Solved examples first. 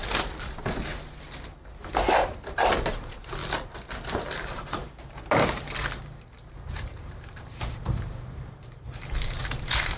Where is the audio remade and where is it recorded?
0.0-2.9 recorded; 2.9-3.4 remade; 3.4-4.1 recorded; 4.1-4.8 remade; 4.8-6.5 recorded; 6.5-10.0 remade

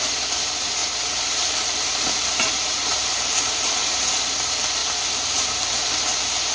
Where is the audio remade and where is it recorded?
0.0-0.8 recorded; 0.8-4.0 remade; 4.0-4.8 recorded; 4.8-5.9 remade; 5.9-6.5 recorded

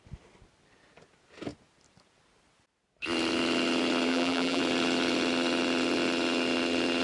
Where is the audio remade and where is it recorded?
0.0-4.1 recorded; 4.1-4.6 remade; 4.6-7.0 recorded

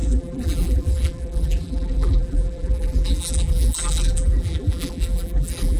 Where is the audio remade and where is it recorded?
0.0-5.8 remade

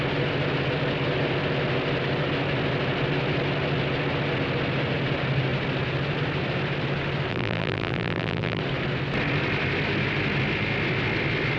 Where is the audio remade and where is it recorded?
0.0-7.3 recorded; 7.3-8.6 remade; 8.6-11.6 recorded

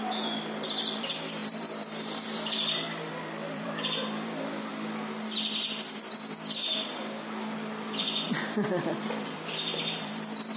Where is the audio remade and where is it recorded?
0.0-4.7 remade; 4.7-8.3 recorded; 8.3-10.6 remade